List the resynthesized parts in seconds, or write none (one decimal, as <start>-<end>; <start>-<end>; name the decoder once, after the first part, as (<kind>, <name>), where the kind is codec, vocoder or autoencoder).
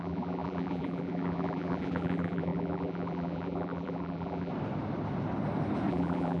0.0-4.5 (vocoder, BigVGAN v2); 5.9-6.4